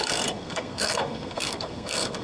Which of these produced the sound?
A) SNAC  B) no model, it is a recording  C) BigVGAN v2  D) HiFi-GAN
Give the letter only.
A